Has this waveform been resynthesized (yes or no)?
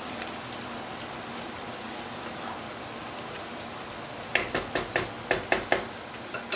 no